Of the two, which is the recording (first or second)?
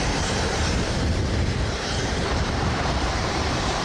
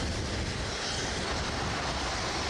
second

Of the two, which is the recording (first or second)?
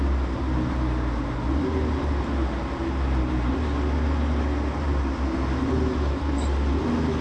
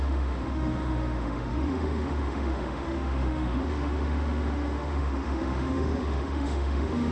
first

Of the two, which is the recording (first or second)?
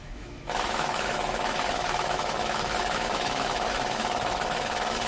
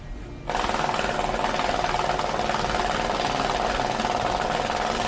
second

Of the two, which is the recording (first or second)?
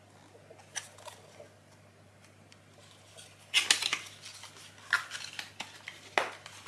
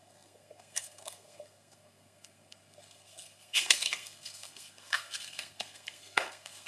first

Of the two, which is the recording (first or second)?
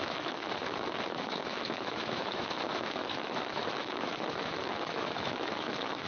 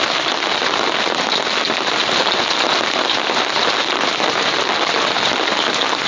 second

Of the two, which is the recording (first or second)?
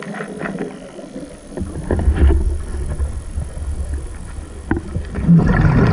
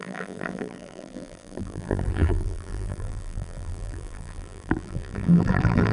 first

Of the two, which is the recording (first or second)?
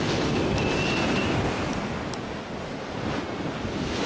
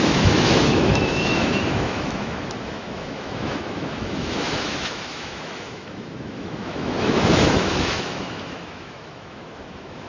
first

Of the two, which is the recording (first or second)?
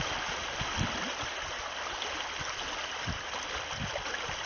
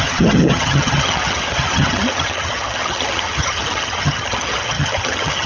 first